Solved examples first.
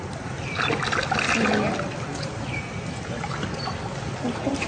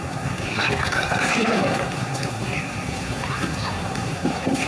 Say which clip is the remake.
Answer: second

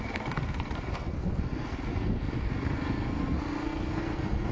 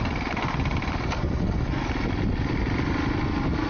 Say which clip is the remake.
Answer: first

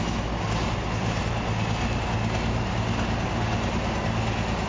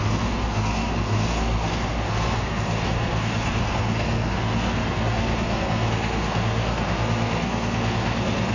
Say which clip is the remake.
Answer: second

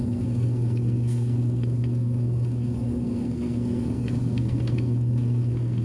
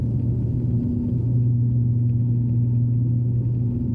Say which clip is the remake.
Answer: first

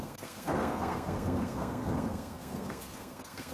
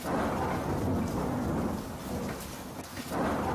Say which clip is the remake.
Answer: first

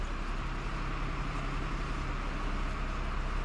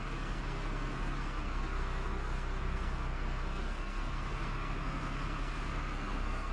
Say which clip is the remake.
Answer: second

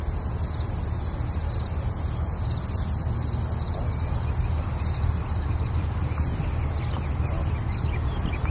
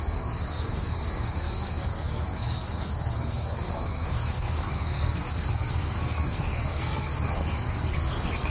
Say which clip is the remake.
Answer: second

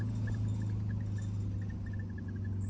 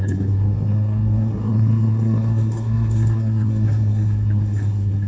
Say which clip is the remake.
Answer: second